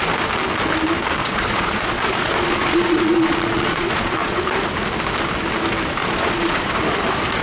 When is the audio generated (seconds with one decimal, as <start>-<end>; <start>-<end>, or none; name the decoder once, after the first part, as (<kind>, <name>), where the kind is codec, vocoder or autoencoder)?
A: 1.2-4.4 (vocoder, Vocos); 6.0-6.7